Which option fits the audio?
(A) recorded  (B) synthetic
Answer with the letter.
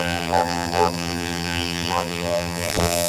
B